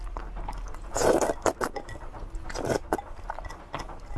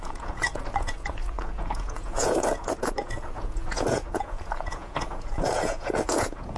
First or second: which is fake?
second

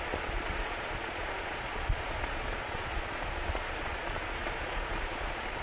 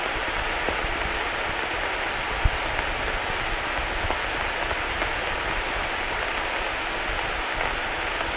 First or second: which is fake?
first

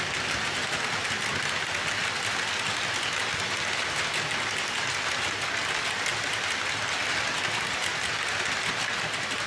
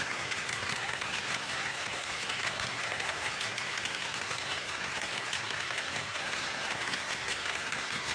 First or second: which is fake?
second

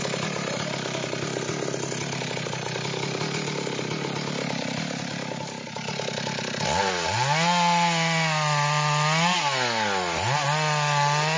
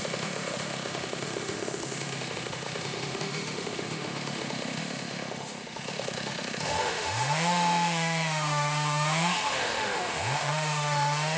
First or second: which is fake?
second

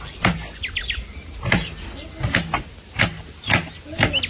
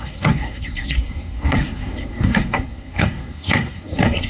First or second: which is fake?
second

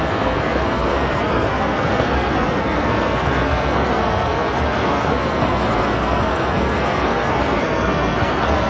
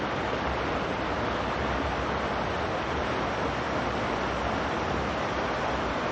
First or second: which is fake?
first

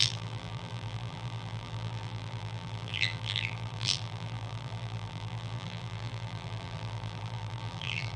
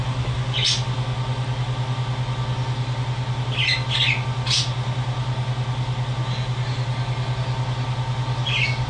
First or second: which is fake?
first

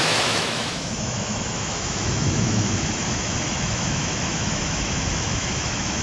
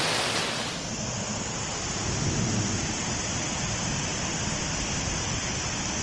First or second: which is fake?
first